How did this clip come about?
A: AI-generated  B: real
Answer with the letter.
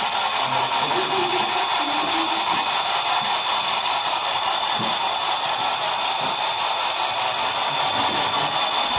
B